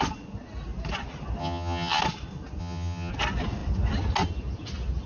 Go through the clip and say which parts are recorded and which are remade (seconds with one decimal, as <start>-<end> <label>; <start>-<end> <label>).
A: 0.0-1.4 recorded; 1.4-2.0 remade; 2.0-2.6 recorded; 2.6-3.1 remade; 3.1-5.1 recorded